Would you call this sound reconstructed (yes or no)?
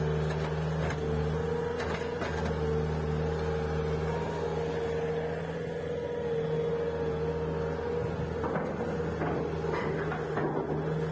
no